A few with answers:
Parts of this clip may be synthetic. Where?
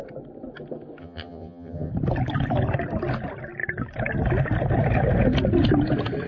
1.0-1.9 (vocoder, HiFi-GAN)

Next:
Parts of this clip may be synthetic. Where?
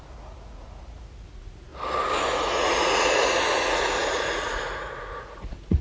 0.0-1.7 (vocoder, Vocos); 2.3-5.8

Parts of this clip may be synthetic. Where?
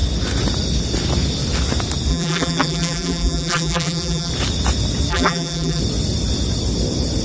2.1-4.3 (vocoder, BigVGAN v2); 5.1-5.8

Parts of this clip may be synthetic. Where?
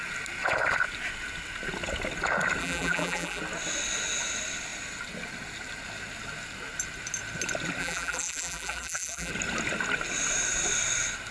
2.6-3.4 (vocoder, BigVGAN v2); 7.8-9.3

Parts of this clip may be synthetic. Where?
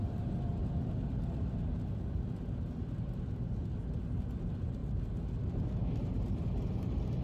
0.0-0.6 (vocoder, BigVGAN v2); 4.0-4.8; 6.0-7.2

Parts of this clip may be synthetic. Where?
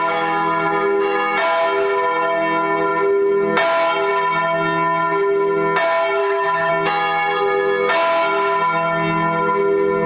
6.2-6.7 (autoencoder, DAC-VAE)